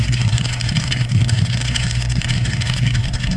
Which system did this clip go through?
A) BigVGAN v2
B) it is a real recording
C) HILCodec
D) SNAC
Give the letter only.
D